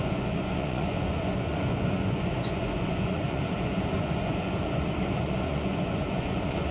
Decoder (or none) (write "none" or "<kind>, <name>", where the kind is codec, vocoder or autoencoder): vocoder, Vocos